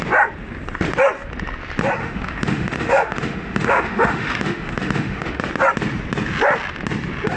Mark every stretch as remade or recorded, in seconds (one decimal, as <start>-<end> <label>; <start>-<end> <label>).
0.0-2.0 recorded; 2.0-5.4 remade; 5.4-7.4 recorded